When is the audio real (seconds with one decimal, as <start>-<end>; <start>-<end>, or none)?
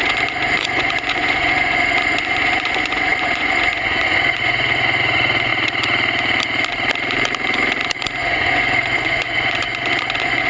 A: 5.5-8.2